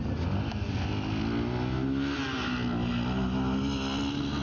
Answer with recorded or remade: recorded